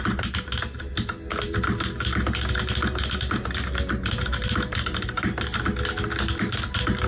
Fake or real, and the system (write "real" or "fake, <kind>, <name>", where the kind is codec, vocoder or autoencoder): real